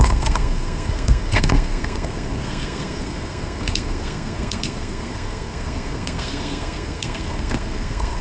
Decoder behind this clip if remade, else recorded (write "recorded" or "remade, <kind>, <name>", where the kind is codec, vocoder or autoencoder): remade, codec, SNAC